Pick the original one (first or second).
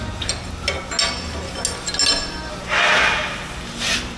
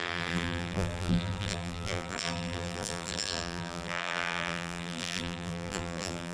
first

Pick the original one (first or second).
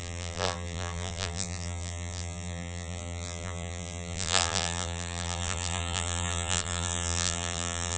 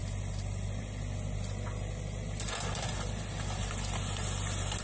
second